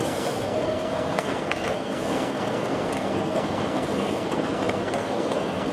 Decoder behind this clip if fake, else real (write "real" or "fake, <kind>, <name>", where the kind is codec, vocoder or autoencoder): fake, codec, SNAC